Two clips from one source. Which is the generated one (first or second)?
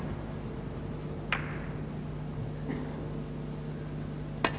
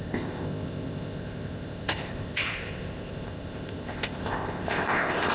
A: second